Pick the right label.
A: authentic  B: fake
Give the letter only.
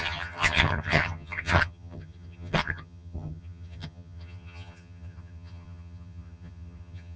B